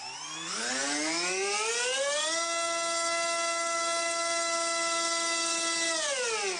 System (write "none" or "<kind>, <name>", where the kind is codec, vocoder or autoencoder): none